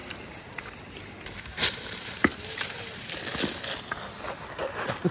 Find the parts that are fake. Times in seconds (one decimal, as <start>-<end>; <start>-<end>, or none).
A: 0.0-3.1